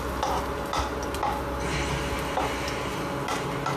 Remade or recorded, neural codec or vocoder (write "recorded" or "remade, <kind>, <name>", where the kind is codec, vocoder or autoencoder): recorded